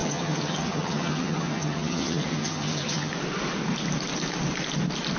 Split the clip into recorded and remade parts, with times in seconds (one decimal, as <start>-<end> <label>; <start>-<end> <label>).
0.0-3.1 remade; 3.1-5.2 recorded